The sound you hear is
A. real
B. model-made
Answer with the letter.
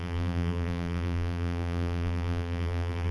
B